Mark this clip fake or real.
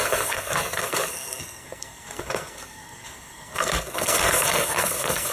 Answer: fake